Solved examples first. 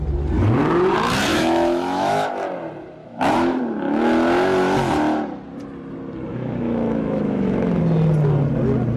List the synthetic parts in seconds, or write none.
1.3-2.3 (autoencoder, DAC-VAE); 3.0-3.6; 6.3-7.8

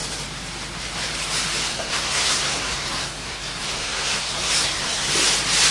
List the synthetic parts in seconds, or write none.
1.7-5.1 (codec, SNAC)

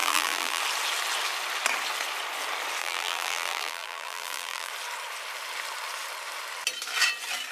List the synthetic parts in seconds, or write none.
0.0-0.6 (vocoder, BigVGAN v2); 2.8-4.7

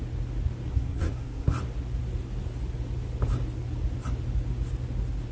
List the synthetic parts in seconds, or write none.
0.7-1.5 (codec, SNAC)

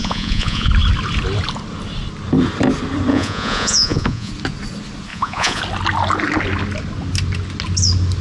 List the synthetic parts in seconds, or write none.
0.0-0.7 (vocoder, Vocos); 3.1-4.3; 5.1-5.6

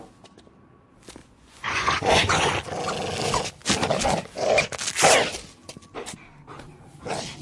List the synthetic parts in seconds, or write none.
1.2-2.5 (vocoder, Vocos)